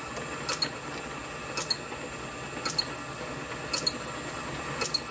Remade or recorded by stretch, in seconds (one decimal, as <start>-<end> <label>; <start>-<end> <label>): 0.0-5.1 recorded